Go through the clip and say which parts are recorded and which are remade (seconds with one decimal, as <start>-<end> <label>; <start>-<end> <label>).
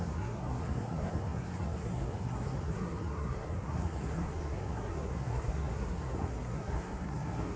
0.0-7.6 remade